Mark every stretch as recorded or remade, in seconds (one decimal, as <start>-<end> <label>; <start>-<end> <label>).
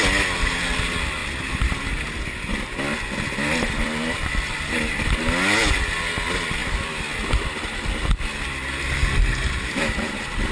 0.0-10.5 recorded